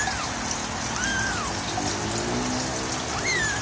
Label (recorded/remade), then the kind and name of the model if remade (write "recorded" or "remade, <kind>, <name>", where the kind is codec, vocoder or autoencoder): recorded